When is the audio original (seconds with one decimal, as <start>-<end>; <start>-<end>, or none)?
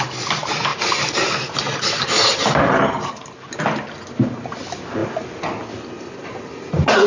0.0-7.1